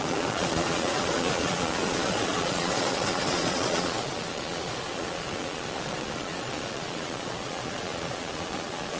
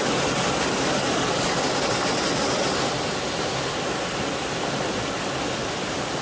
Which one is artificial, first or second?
first